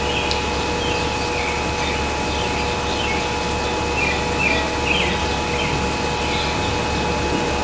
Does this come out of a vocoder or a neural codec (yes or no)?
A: no